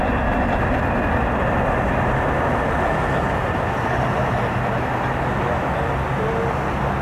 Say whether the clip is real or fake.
real